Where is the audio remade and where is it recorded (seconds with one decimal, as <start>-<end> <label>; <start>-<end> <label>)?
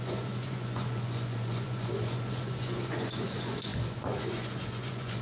0.0-5.2 remade